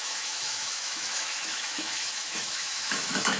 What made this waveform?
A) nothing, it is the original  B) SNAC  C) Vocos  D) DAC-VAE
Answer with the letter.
D